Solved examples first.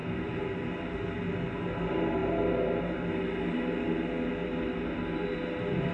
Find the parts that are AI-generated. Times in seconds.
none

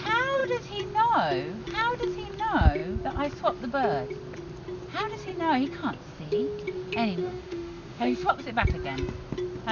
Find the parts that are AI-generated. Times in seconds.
7.2-8.3 (autoencoder, DAC-VAE)

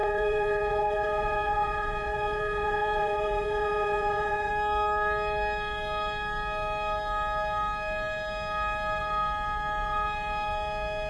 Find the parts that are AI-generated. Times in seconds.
0.0-4.5 (vocoder, Vocos)

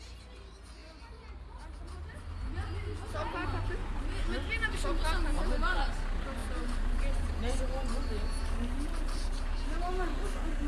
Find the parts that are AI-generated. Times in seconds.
none

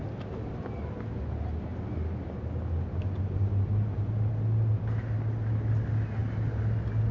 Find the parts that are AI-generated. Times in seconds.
none

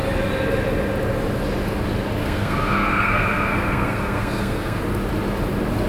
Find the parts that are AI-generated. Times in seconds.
2.2-4.8 (codec, SNAC)